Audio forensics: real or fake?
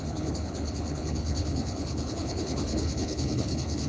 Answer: fake